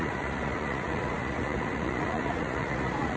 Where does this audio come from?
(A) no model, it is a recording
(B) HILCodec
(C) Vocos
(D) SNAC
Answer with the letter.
C